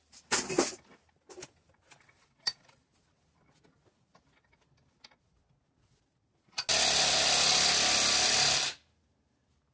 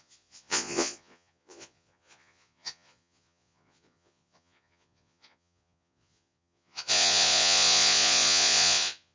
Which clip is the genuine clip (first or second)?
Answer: first